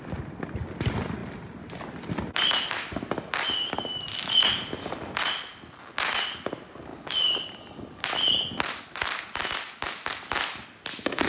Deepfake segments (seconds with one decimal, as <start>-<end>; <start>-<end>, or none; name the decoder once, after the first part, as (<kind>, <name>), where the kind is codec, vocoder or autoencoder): none